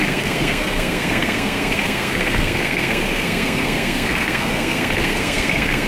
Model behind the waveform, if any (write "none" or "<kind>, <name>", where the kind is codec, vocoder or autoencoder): codec, SNAC